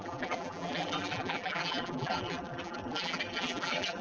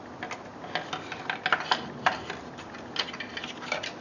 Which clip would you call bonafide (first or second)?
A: second